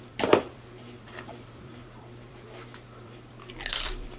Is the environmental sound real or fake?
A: fake